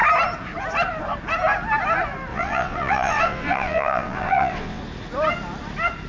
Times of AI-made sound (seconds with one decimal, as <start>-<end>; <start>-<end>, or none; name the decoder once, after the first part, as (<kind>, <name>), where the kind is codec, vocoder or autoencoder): 2.3-4.8 (vocoder, WaveNeXt)

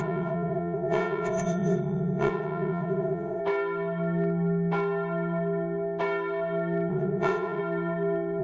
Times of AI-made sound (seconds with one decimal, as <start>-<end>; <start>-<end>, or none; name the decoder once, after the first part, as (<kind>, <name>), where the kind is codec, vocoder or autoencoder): 0.0-3.4 (vocoder, WaveNeXt); 6.9-7.6

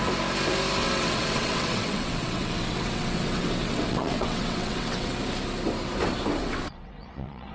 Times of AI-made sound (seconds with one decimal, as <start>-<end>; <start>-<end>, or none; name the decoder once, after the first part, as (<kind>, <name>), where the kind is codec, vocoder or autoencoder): 0.8-5.1 (vocoder, WaveNeXt); 6.4-7.5